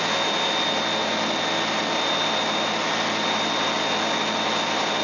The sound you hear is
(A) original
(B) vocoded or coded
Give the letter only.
A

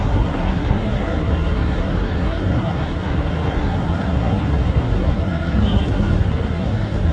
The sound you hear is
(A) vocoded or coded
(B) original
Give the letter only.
A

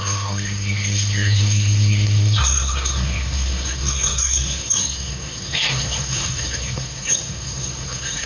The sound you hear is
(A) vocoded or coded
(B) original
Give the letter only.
A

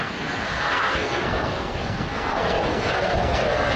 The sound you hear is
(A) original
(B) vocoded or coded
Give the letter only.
B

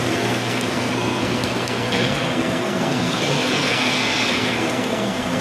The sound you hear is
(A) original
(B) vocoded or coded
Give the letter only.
B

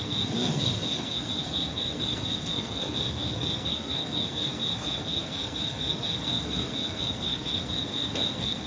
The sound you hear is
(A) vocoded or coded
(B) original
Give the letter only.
A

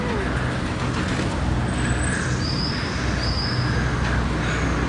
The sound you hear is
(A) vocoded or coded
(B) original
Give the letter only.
B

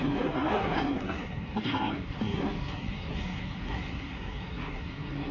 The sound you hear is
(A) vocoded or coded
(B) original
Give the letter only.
A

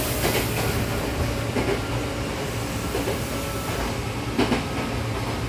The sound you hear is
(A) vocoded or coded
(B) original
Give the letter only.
B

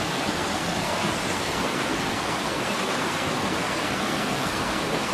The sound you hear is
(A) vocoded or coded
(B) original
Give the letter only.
A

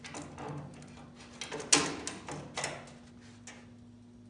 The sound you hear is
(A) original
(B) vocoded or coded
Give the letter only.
A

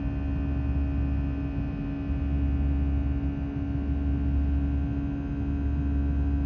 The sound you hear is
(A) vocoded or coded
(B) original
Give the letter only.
B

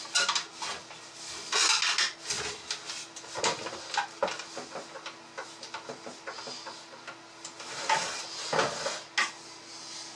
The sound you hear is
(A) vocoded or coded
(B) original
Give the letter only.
B